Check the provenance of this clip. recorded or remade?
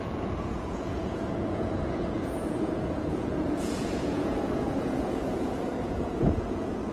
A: remade